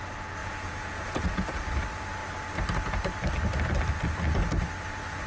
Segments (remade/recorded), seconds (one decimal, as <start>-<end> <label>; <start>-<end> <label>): 0.0-0.4 recorded; 0.4-1.8 remade; 1.8-5.3 recorded